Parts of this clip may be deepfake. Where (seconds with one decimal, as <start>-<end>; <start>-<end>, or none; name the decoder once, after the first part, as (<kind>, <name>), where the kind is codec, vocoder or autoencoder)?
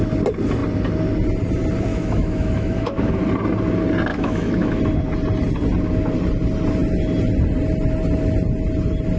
1.9-3.1 (autoencoder, DAC-VAE); 4.1-4.8